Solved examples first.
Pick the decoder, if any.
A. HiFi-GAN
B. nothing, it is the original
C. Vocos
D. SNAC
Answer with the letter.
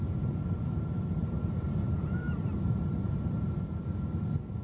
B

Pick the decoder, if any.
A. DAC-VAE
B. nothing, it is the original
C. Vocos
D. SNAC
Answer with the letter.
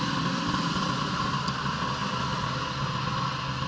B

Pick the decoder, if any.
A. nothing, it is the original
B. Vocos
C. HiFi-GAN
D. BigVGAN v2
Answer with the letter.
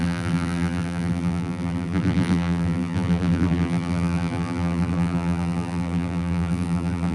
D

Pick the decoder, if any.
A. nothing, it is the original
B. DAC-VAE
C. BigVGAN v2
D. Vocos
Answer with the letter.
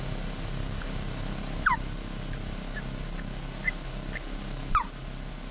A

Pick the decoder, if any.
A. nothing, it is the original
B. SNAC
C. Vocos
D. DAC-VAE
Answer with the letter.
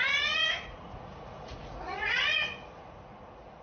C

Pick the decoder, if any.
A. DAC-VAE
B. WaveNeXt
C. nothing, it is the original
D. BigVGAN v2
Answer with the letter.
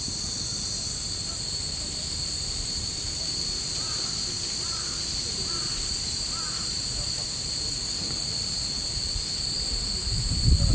D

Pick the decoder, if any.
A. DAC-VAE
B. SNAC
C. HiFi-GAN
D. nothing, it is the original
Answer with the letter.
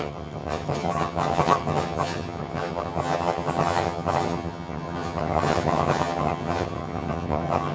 C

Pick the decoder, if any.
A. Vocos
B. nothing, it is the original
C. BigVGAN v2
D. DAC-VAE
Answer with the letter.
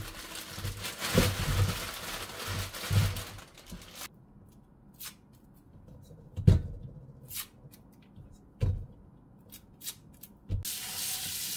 B